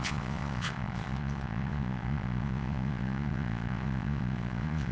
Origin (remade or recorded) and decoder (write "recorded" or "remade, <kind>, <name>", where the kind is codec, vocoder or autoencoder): remade, vocoder, Vocos